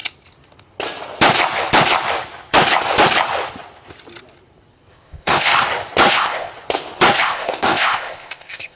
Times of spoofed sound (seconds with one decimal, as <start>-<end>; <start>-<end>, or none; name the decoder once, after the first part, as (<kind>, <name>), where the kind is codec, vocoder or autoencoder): 4.9-5.5 (codec, ZipCodec); 6.1-6.5; 7.2-8.8